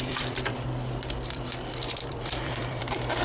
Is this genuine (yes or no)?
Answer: no